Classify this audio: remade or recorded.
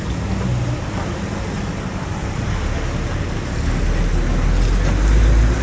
recorded